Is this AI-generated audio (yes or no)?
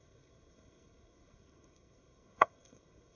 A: yes